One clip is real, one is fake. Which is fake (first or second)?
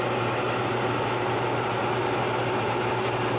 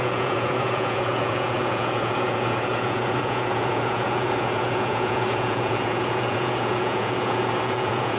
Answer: second